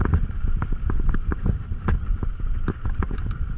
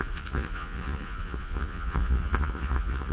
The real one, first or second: first